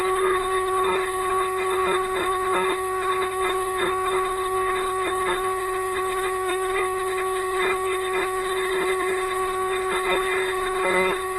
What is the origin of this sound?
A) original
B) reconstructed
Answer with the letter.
B